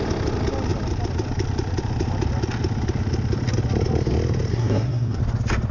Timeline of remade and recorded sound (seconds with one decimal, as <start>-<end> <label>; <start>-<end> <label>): 0.0-4.5 recorded; 4.5-5.2 remade; 5.2-5.7 recorded